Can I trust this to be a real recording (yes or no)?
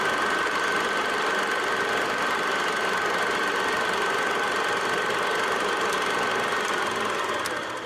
yes